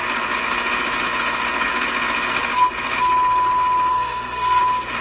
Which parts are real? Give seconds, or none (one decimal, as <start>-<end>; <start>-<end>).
0.0-3.9; 4.6-5.0